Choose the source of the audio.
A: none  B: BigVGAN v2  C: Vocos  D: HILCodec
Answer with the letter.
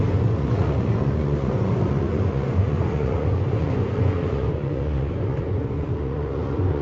C